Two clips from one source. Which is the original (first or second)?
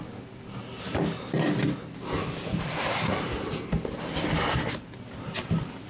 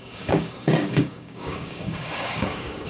first